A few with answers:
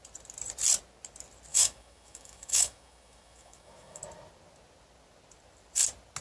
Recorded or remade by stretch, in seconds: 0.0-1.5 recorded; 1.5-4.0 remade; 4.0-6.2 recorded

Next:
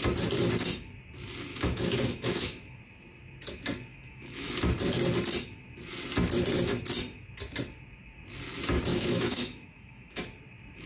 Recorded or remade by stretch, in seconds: 0.0-1.5 recorded; 1.5-2.8 remade; 2.8-3.9 recorded; 3.9-4.5 remade; 4.5-8.9 recorded; 8.9-10.2 remade; 10.2-10.9 recorded